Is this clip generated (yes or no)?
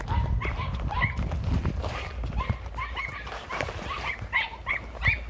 no